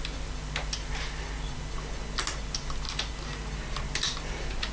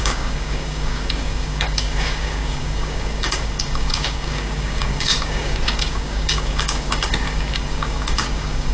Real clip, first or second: first